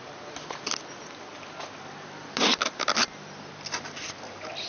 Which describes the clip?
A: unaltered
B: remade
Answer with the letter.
A